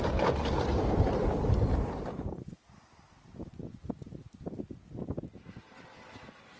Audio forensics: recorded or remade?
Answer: recorded